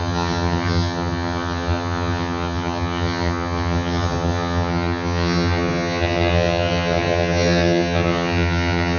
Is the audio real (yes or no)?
no